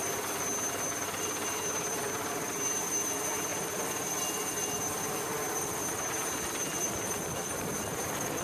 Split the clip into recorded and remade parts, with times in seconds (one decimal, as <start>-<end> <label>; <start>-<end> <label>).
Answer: 0.0-8.4 recorded